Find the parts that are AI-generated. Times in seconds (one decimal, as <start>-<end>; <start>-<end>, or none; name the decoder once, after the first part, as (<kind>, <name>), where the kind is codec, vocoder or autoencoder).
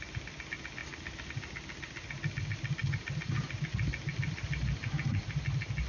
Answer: none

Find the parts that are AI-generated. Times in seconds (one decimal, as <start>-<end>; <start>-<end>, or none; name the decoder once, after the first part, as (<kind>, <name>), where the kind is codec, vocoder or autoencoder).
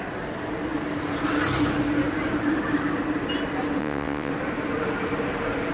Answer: 3.8-4.3 (vocoder, WaveNeXt)